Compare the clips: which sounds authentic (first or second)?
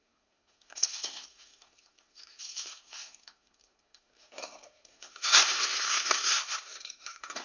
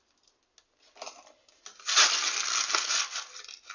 second